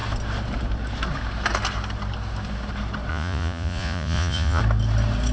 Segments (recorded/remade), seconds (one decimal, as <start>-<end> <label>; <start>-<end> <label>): 0.0-3.1 recorded; 3.1-4.6 remade; 4.6-5.3 recorded